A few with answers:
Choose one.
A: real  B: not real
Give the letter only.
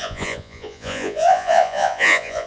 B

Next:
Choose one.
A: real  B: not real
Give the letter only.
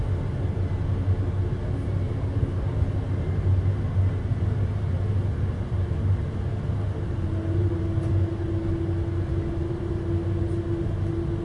A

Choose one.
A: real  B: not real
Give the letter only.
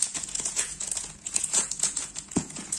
B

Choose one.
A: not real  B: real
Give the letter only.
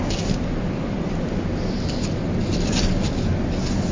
B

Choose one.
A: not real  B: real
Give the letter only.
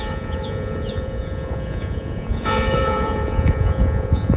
A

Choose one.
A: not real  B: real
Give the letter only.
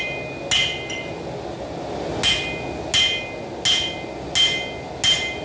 B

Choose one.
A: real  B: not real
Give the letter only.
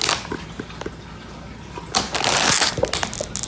A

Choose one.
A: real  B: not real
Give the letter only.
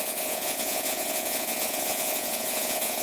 B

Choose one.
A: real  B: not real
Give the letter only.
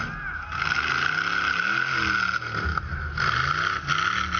A